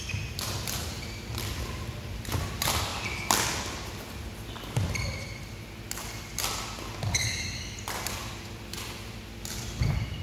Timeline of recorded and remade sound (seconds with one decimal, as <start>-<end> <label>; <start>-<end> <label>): 0.0-10.2 recorded